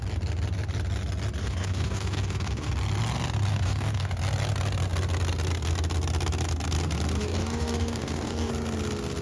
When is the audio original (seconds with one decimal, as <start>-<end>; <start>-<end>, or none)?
0.0-1.4; 2.7-3.5; 4.1-7.2; 8.5-9.2